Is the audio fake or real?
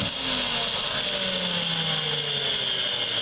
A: real